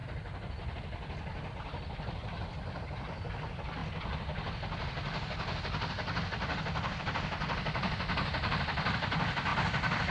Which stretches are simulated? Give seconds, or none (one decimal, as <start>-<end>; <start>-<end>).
1.5-3.8; 7.0-10.1